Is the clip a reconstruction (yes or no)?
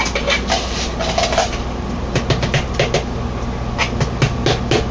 no